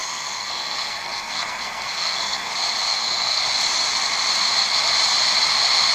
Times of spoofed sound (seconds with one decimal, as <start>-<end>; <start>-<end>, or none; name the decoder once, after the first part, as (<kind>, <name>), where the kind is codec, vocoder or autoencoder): 0.0-2.5 (codec, SNAC); 2.9-3.4